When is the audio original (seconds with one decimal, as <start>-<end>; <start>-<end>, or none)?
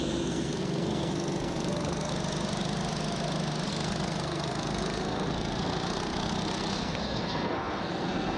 2.1-3.7